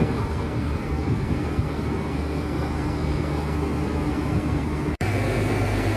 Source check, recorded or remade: remade